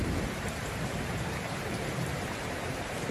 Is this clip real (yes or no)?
no